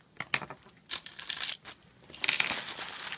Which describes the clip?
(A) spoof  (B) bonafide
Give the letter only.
B